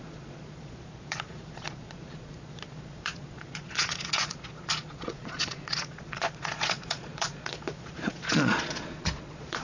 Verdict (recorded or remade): remade